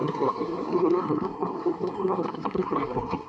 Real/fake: fake